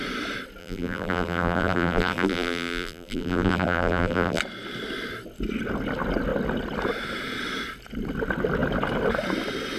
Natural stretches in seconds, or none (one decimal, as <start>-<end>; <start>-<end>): 0.0-0.6; 4.4-9.8